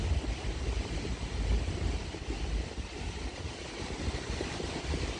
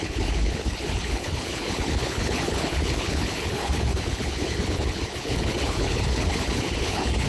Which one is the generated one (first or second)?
second